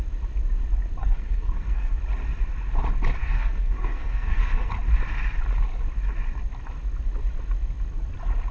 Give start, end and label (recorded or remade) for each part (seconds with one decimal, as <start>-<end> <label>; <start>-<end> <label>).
0.0-1.0 recorded; 1.0-2.0 remade; 2.0-3.2 recorded; 3.2-4.7 remade; 4.7-8.5 recorded